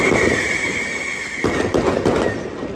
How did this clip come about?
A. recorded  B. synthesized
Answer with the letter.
A